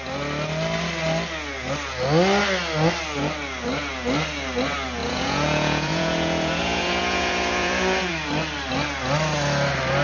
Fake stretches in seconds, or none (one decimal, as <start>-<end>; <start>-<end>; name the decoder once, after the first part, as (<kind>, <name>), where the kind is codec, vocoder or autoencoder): 5.0-8.1 (vocoder, Vocos)